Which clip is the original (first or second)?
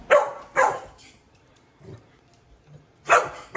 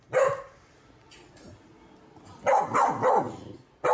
second